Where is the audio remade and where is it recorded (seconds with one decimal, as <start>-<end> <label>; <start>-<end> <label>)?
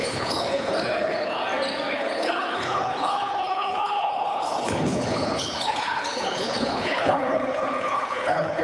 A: 0.0-1.4 remade; 1.4-1.9 recorded; 1.9-8.6 remade